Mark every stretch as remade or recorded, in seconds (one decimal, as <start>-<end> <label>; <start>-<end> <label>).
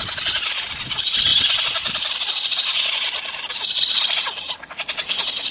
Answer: 0.0-5.5 recorded